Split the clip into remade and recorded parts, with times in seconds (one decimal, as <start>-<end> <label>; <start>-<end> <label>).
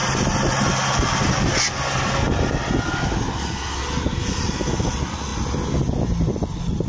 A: 0.0-6.9 recorded